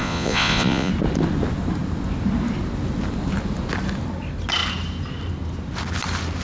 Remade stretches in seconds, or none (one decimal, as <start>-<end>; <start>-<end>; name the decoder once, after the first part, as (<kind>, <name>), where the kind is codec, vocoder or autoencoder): 0.0-0.9 (vocoder, Vocos)